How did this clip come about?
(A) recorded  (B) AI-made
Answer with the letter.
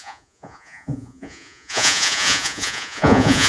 B